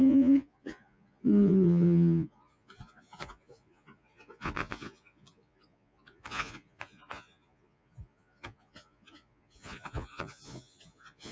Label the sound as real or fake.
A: fake